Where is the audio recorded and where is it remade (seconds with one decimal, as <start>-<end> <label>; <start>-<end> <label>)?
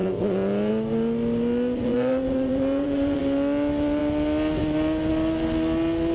0.0-1.8 recorded; 1.8-3.2 remade; 3.2-6.1 recorded